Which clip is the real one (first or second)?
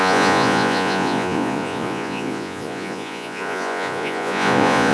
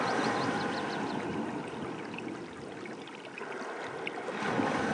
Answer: second